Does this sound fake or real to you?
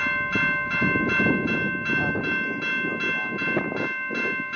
real